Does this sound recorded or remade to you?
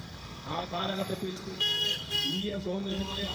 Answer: remade